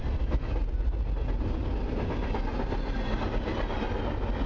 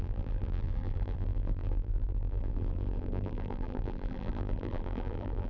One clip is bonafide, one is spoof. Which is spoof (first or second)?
second